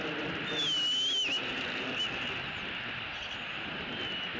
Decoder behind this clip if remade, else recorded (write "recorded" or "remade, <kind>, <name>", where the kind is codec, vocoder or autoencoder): recorded